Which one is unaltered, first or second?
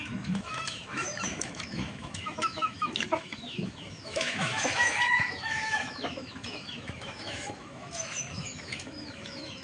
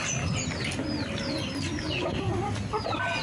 second